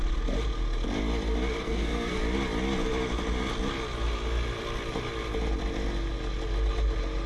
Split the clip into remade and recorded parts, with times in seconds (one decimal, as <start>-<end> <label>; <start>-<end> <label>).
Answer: 0.0-1.6 recorded; 1.6-2.2 remade; 2.2-7.3 recorded